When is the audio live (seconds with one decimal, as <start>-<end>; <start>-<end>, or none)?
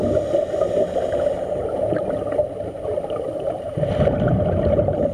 0.0-3.3; 3.9-5.1